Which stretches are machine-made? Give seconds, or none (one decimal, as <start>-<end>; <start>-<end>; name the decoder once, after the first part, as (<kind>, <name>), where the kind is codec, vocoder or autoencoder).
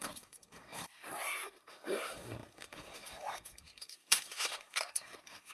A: 0.0-5.5 (codec, SNAC)